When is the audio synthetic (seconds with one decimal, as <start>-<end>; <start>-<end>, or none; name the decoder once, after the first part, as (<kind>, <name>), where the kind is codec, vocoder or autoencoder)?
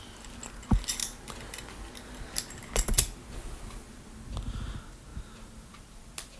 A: 5.1-5.8 (vocoder, BigVGAN v2)